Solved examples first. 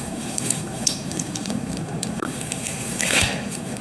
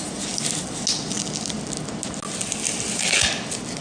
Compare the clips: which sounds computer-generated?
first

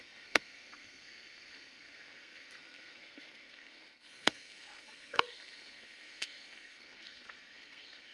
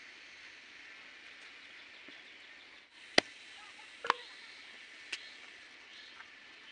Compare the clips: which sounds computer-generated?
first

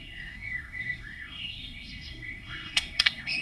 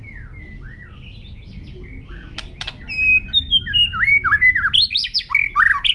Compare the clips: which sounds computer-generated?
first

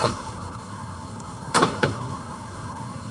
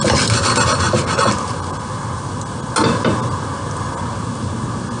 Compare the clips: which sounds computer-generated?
first